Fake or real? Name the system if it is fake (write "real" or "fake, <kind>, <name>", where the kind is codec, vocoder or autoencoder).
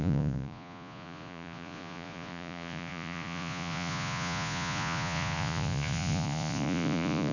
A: fake, vocoder, Vocos